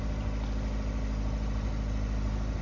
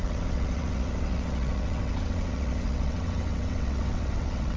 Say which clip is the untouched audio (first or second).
first